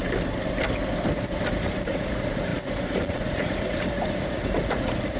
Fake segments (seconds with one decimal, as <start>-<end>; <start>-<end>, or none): 1.6-5.2